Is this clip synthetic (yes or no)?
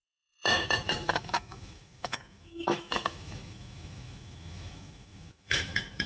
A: yes